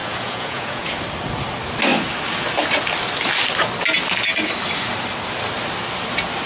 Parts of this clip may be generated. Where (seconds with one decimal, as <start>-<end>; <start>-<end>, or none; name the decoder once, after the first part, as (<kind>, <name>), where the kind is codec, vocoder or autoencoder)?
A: 0.0-0.9 (vocoder, Vocos)